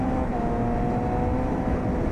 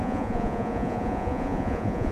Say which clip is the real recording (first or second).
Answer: first